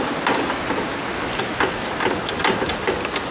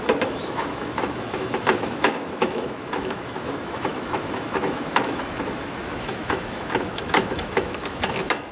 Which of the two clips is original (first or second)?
first